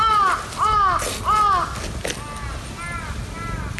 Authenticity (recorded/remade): recorded